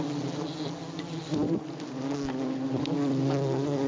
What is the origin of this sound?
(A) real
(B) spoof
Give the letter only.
A